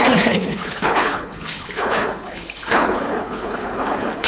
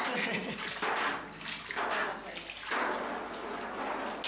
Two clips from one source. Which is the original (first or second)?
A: second